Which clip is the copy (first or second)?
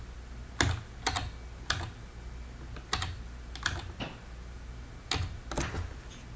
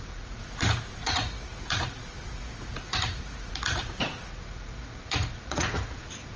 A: second